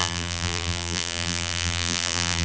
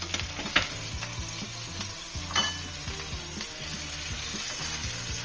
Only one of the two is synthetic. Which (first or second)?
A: first